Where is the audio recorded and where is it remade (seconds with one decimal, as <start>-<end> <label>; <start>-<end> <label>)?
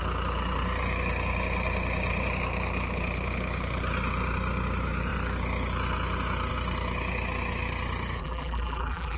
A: 0.0-8.2 recorded; 8.2-9.2 remade